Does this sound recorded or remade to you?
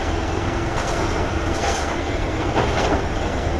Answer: remade